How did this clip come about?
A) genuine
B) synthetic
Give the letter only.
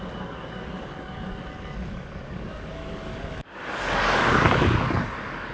B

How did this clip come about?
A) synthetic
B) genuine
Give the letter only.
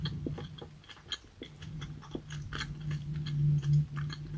B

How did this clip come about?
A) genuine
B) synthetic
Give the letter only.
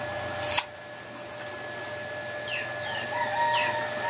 A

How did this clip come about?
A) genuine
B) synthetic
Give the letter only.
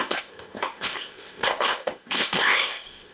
B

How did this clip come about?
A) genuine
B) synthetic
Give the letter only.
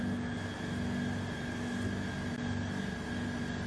A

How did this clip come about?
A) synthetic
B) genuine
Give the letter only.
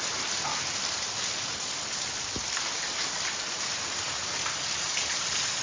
B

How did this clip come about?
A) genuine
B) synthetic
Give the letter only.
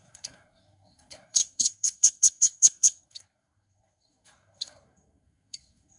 B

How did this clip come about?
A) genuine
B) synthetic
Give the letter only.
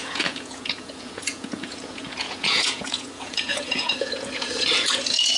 B